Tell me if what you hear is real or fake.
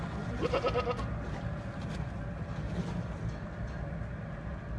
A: real